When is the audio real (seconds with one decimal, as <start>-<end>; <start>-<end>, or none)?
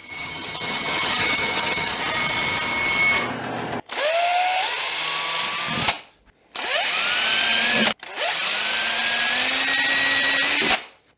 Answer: 2.0-11.2